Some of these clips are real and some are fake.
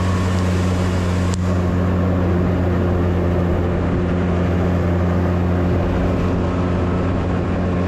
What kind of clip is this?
real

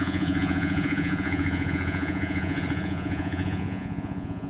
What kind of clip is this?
fake